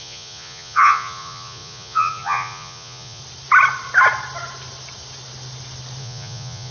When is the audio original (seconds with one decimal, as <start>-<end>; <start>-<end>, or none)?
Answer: 3.2-6.0